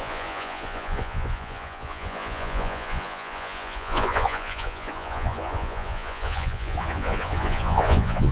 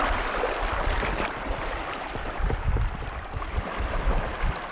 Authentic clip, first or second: second